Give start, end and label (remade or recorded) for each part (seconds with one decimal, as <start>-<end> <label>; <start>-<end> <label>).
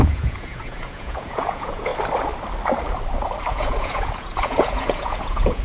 0.0-1.9 remade; 1.9-3.5 recorded; 3.5-5.6 remade